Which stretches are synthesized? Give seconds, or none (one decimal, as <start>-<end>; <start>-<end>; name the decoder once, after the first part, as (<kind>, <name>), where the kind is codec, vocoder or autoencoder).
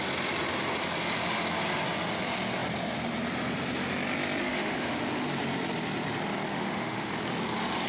4.4-5.0 (autoencoder, DAC-VAE); 6.5-7.1